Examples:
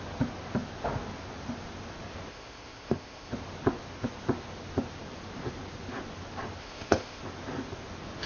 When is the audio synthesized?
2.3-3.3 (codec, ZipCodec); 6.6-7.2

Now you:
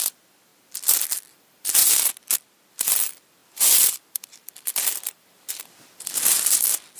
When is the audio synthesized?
0.0-1.8 (vocoder, BigVGAN v2); 2.7-7.0

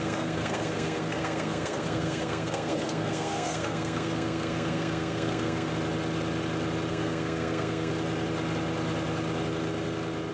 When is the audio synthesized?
0.0-5.7 (codec, SNAC); 6.9-7.9

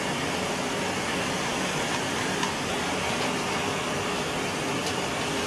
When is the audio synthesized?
none